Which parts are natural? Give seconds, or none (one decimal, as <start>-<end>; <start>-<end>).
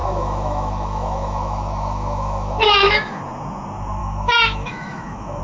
3.2-4.0